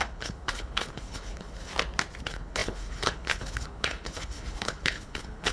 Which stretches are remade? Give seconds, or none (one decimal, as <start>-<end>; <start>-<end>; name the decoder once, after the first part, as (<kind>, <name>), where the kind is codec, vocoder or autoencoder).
0.0-1.7 (codec, HILCodec); 2.2-5.5